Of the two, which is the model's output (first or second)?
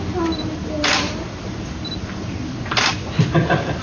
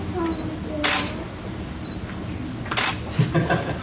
first